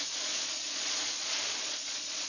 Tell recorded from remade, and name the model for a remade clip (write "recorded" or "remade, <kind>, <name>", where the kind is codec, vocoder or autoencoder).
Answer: remade, vocoder, Vocos